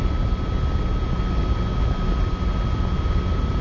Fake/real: real